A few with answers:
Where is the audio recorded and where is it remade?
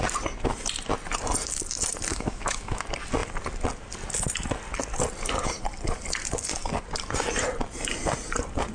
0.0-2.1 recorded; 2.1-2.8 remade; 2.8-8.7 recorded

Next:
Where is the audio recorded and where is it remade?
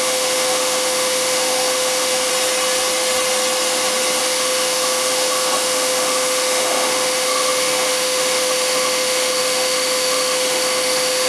0.0-2.3 remade; 2.3-4.2 recorded; 4.2-11.3 remade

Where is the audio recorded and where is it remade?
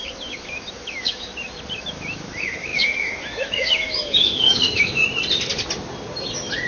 0.0-1.3 remade; 1.3-1.8 recorded; 1.8-5.0 remade; 5.0-6.7 recorded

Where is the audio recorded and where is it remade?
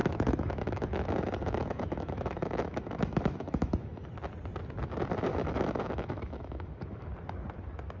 0.0-4.1 remade; 4.1-5.3 recorded; 5.3-7.1 remade; 7.1-8.0 recorded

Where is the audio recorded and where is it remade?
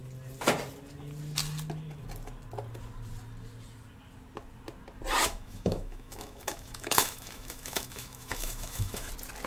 0.0-5.2 recorded; 5.2-9.1 remade; 9.1-9.5 recorded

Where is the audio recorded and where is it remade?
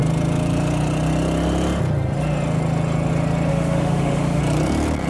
0.0-3.5 recorded; 3.5-4.4 remade; 4.4-5.1 recorded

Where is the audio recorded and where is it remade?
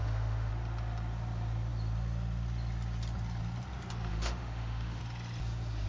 0.0-0.5 remade; 0.5-4.1 recorded; 4.1-5.0 remade; 5.0-5.9 recorded